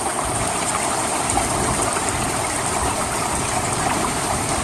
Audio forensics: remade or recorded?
remade